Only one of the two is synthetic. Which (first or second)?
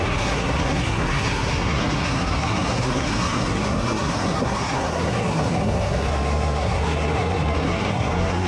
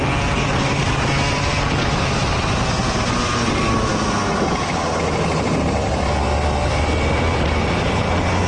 first